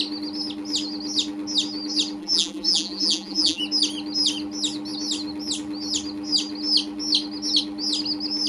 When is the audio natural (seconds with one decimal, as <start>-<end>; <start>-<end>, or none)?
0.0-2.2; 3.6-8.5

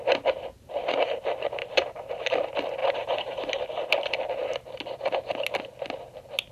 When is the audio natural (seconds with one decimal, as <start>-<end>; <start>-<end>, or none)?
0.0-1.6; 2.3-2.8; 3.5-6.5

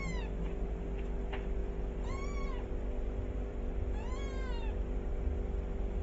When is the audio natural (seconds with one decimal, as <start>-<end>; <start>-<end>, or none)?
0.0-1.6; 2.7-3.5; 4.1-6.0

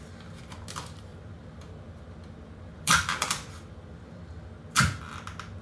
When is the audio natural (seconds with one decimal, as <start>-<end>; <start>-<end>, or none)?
0.0-1.1; 4.2-5.6

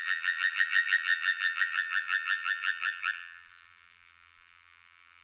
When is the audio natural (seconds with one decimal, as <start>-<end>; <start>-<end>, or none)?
none